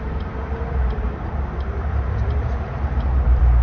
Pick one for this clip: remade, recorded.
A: remade